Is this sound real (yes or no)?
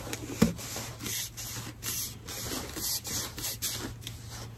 yes